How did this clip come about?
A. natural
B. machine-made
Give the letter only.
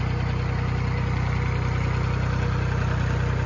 A